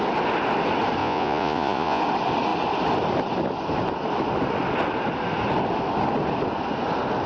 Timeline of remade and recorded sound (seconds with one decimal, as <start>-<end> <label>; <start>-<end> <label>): 0.0-1.0 recorded; 1.0-2.0 remade; 2.0-7.3 recorded